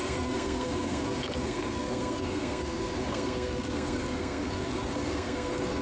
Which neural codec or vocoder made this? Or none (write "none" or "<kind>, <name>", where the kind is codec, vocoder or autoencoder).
codec, SNAC